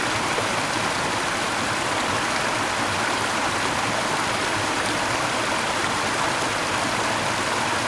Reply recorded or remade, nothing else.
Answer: remade